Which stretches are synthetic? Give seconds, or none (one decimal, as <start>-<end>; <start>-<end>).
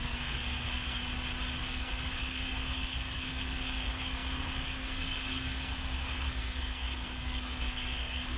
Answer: 0.0-1.0; 1.6-8.4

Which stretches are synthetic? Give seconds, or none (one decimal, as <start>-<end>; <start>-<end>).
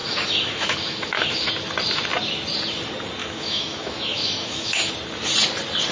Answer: 0.0-1.5; 3.2-4.9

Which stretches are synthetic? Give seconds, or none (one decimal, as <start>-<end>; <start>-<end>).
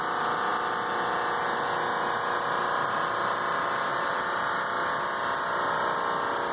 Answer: 3.9-4.5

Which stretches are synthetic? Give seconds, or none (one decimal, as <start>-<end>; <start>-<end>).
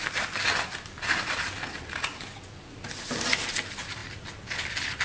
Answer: none